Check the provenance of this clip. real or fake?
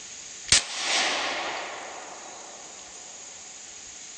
real